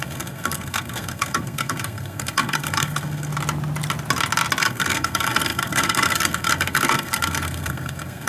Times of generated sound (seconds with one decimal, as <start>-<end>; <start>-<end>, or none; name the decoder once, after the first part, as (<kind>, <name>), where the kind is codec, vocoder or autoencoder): 0.0-3.3 (codec, SNAC); 4.6-8.3

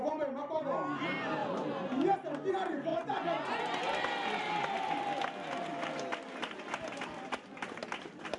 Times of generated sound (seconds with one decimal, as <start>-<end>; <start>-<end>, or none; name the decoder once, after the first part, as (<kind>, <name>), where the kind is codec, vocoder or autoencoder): 2.9-3.6 (vocoder, Vocos)

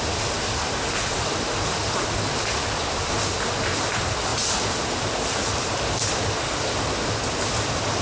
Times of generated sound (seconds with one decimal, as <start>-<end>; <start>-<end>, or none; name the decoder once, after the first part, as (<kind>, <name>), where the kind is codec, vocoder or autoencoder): none

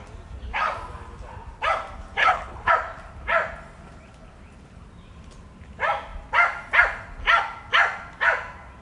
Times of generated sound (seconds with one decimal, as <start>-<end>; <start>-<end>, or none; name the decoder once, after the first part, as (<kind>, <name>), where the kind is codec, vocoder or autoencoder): 2.2-2.7 (codec, HILCodec)

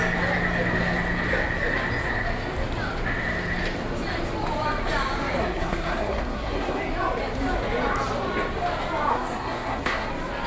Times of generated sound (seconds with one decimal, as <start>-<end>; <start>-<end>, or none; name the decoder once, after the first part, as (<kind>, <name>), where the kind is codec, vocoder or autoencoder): 5.4-6.8 (codec, SNAC); 9.1-10.1

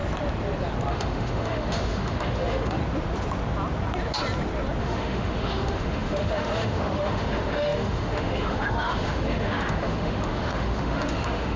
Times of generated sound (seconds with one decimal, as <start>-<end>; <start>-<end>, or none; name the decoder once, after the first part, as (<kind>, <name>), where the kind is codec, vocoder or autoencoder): 0.9-2.8 (autoencoder, DAC-VAE); 4.8-11.6